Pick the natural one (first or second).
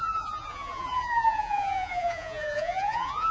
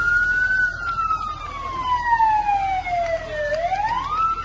second